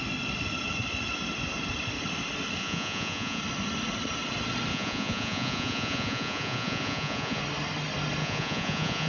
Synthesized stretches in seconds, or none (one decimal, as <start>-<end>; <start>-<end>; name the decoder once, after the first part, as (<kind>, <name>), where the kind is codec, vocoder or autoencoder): 2.6-3.4 (vocoder, Vocos); 4.7-7.4; 8.2-9.1